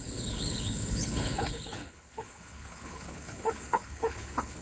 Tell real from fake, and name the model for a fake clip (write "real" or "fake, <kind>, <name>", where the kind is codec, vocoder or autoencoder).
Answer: fake, codec, HILCodec